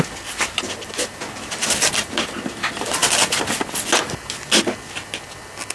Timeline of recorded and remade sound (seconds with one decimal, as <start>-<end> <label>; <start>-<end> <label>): 0.0-5.7 recorded